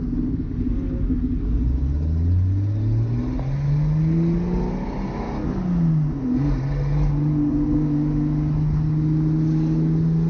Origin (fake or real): real